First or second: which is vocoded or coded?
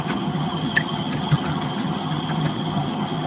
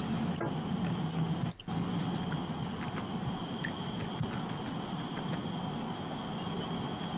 first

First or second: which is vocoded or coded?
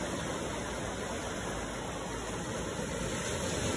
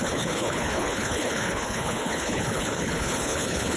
second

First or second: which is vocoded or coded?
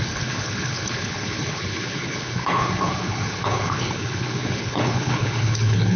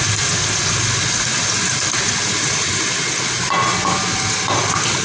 first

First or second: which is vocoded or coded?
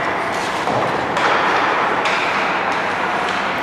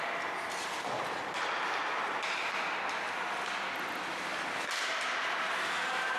first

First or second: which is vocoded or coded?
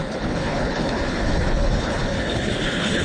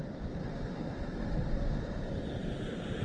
first